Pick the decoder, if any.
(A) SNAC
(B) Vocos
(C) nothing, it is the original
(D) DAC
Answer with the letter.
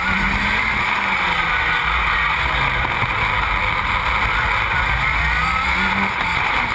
C